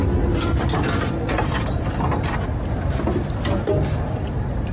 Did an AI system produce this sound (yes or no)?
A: no